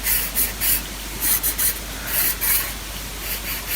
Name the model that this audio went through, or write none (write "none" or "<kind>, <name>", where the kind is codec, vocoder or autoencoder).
none